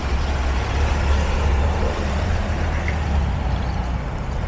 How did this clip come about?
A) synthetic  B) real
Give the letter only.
A